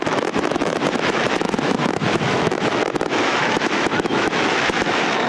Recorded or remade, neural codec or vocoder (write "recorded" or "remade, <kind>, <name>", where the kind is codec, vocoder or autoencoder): remade, autoencoder, DAC-VAE